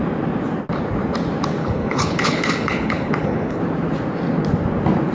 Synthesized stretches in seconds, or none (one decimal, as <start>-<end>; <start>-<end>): 1.6-3.6